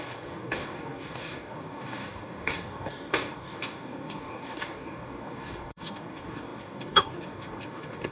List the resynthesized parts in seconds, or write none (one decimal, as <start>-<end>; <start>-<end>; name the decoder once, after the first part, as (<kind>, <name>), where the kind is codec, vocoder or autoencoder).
0.0-8.1 (codec, DAC)